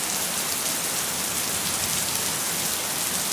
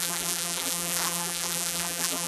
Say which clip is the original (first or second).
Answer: first